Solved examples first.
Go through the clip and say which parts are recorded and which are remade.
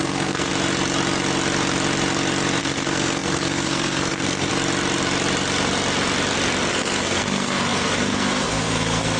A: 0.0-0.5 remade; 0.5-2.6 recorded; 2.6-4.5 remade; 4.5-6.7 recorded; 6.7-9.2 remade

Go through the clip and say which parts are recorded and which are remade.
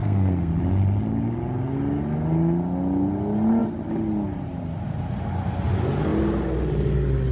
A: 0.0-0.5 remade; 0.5-7.3 recorded